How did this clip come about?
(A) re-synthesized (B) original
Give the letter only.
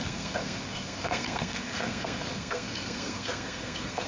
A